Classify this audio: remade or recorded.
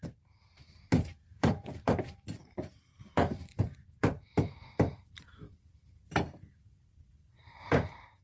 remade